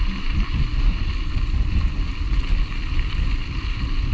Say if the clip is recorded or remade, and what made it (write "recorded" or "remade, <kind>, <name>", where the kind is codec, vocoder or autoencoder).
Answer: recorded